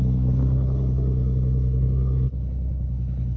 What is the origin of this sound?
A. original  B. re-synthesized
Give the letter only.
B